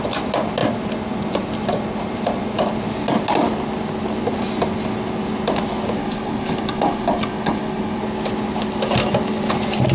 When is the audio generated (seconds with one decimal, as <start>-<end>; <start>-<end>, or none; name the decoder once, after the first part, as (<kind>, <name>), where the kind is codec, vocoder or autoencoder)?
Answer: 6.0-8.0 (codec, DAC)